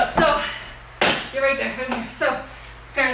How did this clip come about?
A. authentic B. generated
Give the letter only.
A